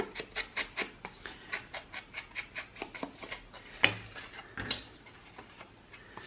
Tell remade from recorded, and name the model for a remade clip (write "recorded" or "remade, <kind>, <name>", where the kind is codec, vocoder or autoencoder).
recorded